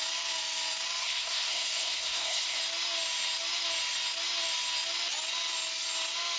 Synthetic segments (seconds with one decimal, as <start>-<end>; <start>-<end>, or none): 1.0-2.6